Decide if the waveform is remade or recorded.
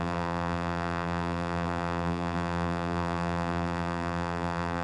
remade